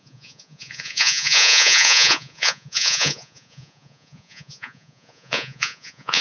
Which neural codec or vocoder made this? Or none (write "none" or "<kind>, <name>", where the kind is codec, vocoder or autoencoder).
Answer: vocoder, Vocos